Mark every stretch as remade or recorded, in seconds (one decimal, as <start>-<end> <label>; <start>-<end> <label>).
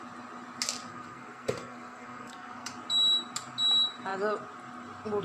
0.0-0.9 recorded; 0.9-2.7 remade; 2.7-5.2 recorded